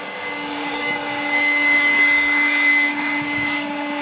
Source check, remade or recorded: remade